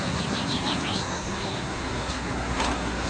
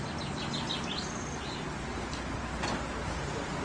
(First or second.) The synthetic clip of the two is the first